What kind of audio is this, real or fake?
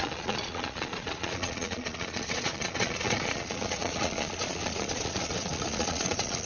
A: fake